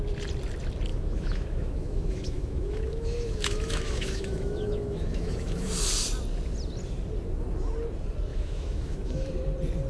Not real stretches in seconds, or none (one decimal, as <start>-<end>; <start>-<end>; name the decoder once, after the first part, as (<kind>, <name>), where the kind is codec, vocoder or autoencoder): 0.9-5.7 (autoencoder, DAC-VAE); 8.3-9.3